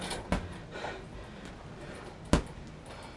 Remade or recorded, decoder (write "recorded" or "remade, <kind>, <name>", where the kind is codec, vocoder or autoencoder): recorded